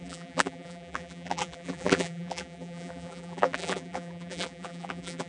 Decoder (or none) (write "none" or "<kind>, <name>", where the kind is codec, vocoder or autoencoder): vocoder, BigVGAN v2